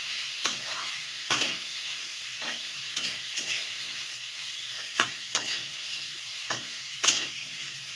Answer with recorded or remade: remade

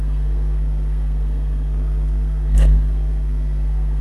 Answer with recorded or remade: remade